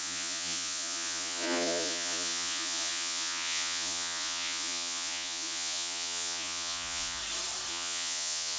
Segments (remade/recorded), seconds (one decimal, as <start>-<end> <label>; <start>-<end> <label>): 0.0-7.2 remade; 7.2-7.7 recorded; 7.7-8.6 remade